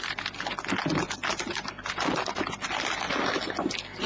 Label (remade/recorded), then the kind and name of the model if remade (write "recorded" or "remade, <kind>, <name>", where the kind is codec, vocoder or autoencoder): recorded